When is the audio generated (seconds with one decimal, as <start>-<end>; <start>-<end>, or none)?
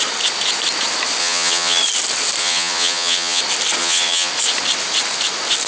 1.2-1.8; 2.4-3.4; 3.8-4.3